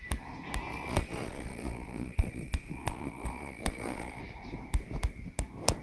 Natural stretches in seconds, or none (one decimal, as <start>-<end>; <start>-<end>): 0.0-0.7; 4.2-5.8

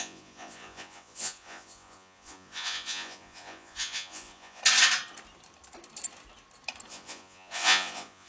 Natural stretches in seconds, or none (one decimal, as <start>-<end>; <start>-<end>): 4.6-6.9

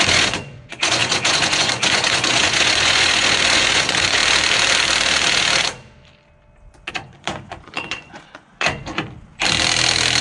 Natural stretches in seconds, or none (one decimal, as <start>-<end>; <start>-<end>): 4.2-6.9; 8.9-10.2

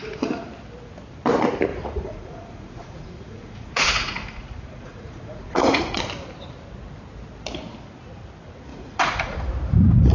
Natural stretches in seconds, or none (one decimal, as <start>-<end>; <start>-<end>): 0.0-1.7; 6.0-8.7; 9.5-10.1

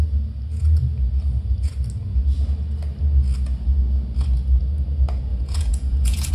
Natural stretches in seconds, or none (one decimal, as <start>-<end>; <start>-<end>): 0.0-5.3

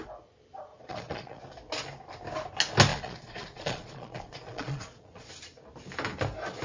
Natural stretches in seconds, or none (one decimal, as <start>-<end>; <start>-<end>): 0.0-0.7; 1.4-2.9; 5.3-6.6

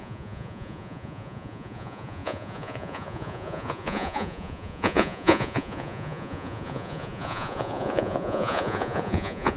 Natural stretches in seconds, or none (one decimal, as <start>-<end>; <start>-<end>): none